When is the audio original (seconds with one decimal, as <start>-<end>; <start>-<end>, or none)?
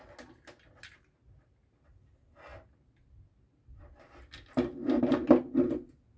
0.0-6.2